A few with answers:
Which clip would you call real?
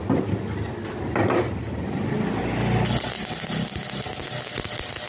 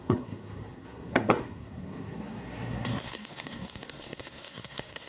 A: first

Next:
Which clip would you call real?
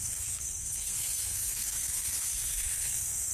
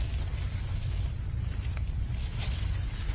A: second